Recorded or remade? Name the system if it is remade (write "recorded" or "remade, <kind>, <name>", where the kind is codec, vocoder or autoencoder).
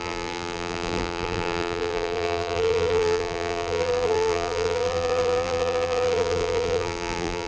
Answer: remade, vocoder, BigVGAN v2